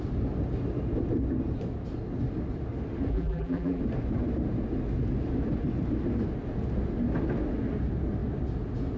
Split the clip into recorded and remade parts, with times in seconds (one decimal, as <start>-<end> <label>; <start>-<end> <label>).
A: 0.0-3.1 recorded; 3.1-3.8 remade; 3.8-9.0 recorded

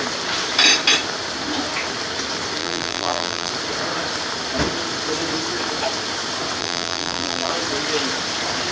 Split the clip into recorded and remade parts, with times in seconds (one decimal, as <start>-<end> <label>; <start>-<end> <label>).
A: 0.0-2.6 recorded; 2.6-3.5 remade; 3.5-6.6 recorded; 6.6-7.5 remade; 7.5-8.7 recorded